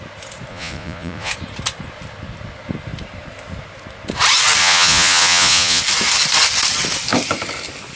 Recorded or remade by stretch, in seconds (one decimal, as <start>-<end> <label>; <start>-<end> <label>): 0.0-0.5 recorded; 0.5-1.3 remade; 1.3-4.6 recorded; 4.6-5.8 remade; 5.8-8.0 recorded